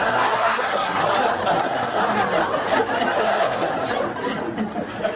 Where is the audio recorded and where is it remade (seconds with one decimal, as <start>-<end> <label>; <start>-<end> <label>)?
0.0-1.0 remade; 1.0-1.6 recorded; 1.6-2.0 remade; 2.0-3.2 recorded; 3.2-3.7 remade; 3.7-5.2 recorded